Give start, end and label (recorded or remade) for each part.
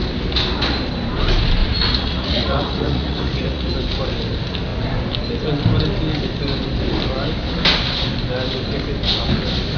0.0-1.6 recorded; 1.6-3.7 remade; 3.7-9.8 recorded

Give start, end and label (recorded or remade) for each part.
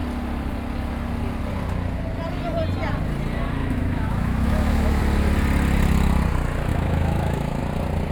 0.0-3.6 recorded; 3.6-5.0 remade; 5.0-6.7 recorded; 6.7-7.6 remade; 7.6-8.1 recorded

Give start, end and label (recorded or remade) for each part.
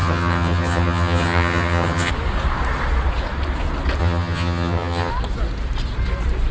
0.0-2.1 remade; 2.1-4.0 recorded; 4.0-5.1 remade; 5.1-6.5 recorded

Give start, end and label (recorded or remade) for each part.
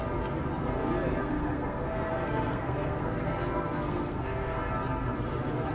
0.0-1.2 recorded; 1.2-4.6 remade; 4.6-5.7 recorded